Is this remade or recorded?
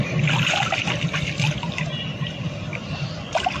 recorded